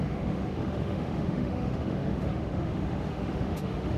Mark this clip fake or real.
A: fake